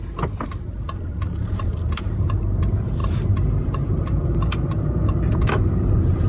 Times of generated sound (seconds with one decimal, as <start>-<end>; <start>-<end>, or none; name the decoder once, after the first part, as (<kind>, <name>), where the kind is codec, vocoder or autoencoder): none